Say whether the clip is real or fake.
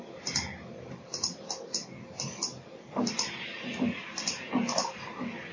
real